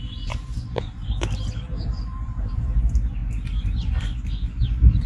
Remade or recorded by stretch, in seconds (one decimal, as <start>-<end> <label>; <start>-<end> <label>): 0.0-2.6 remade; 2.6-5.1 recorded

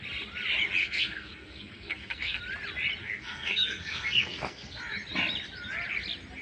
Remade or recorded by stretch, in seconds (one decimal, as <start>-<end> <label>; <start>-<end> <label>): 0.0-0.8 recorded; 0.8-2.4 remade; 2.4-3.0 recorded; 3.0-4.8 remade; 4.8-6.4 recorded

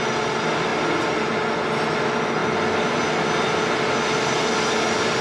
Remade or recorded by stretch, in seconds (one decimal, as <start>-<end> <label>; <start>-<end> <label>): 0.0-5.2 recorded